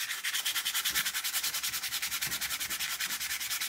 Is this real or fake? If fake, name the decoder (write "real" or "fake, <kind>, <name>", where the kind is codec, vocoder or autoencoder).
real